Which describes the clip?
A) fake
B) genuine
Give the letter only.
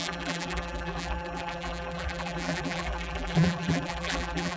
A